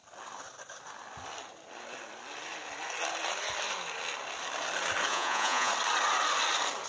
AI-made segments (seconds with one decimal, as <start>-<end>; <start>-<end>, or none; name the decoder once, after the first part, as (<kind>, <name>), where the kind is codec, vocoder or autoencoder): 5.1-5.7 (vocoder, Vocos)